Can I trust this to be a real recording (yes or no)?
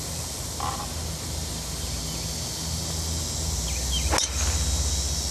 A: yes